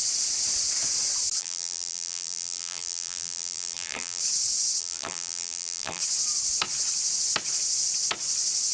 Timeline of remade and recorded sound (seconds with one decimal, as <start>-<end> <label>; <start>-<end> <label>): 0.0-1.4 recorded; 1.4-4.2 remade; 4.2-4.8 recorded; 4.8-6.0 remade; 6.0-8.7 recorded